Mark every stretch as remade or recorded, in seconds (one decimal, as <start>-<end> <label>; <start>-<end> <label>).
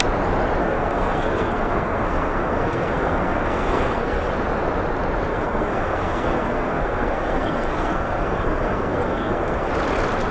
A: 0.0-0.6 recorded; 0.6-4.3 remade; 4.3-5.3 recorded; 5.3-9.7 remade; 9.7-10.3 recorded